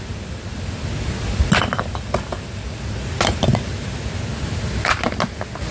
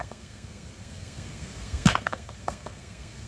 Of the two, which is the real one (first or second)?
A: first